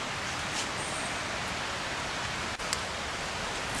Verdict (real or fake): real